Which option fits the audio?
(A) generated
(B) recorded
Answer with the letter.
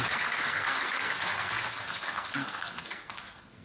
A